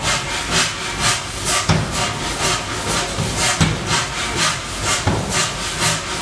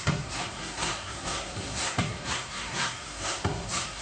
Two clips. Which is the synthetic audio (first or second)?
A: second